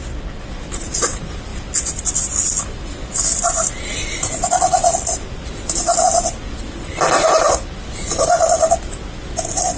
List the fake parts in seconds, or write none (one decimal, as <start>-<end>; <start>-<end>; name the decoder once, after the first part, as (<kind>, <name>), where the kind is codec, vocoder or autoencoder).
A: none